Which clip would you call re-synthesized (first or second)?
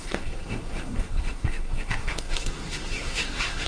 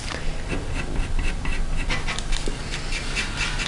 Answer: first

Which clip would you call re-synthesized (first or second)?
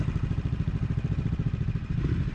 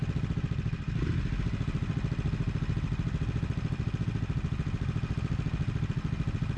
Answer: first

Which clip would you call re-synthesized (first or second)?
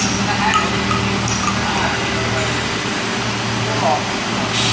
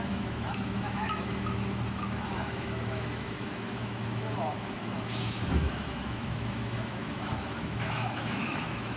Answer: second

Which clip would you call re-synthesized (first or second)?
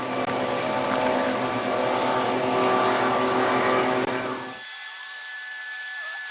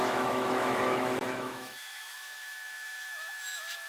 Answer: second